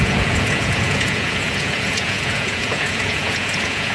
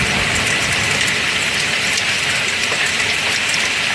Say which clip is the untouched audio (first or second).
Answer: second